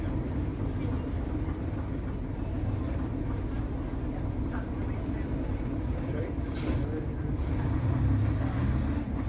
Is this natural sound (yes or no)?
yes